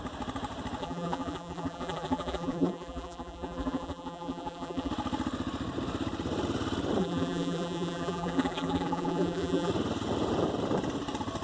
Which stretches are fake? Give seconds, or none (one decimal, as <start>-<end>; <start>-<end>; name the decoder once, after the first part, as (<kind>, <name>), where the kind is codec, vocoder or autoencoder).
0.8-4.9 (vocoder, BigVGAN v2); 7.0-9.7